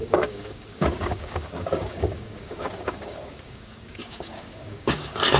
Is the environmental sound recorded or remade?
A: remade